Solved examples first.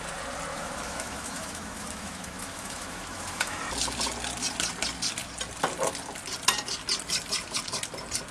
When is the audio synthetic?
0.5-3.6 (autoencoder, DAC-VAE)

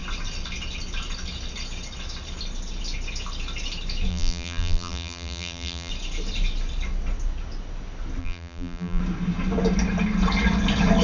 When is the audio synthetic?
4.1-5.9 (vocoder, BigVGAN v2); 8.2-9.0

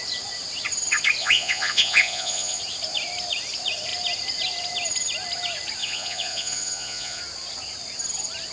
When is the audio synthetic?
1.2-2.6 (vocoder, Vocos); 5.8-7.2

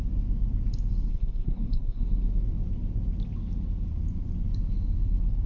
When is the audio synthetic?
1.1-2.0 (codec, SNAC)

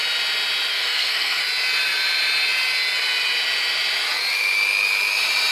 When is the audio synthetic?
0.7-1.4 (codec, SNAC)

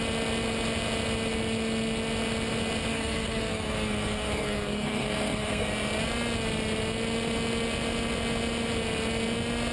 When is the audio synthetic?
2.9-5.7 (codec, SNAC)